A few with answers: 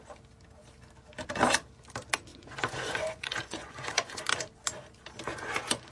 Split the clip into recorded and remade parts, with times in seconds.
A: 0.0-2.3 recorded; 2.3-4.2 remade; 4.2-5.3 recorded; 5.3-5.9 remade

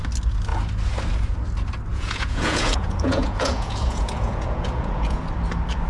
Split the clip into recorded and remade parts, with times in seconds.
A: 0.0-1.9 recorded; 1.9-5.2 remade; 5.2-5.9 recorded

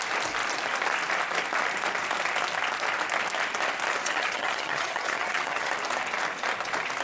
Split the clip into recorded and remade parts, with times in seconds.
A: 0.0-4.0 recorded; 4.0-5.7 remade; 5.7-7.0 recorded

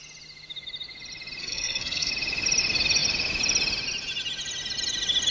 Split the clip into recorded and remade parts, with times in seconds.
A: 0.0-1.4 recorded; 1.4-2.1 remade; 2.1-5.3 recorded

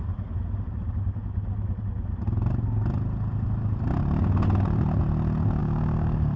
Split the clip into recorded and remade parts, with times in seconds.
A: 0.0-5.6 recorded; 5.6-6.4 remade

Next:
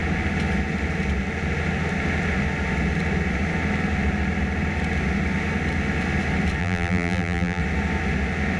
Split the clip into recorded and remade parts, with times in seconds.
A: 0.0-6.6 recorded; 6.6-7.6 remade; 7.6-8.6 recorded

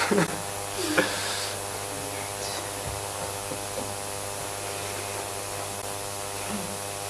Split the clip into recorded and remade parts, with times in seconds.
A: 0.0-7.1 recorded

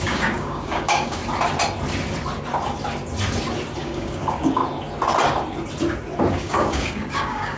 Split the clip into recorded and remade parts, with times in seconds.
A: 0.0-1.2 remade; 1.2-3.8 recorded; 3.8-4.6 remade; 4.6-6.3 recorded; 6.3-7.6 remade